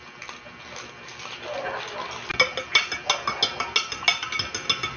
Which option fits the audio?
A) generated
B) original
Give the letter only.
B